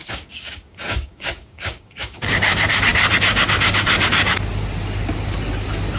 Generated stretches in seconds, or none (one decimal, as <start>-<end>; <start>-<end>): 0.0-2.2